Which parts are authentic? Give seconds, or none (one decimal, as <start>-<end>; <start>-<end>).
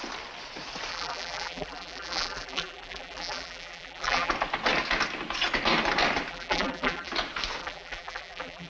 0.0-0.9; 4.3-6.3; 7.1-7.6